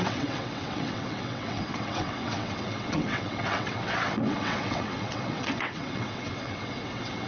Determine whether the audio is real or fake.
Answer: fake